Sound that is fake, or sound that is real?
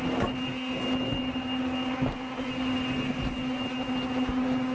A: real